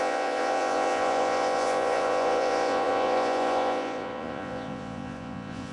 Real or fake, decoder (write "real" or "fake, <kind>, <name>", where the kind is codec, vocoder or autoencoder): fake, vocoder, Vocos